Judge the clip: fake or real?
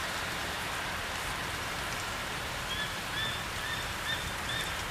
fake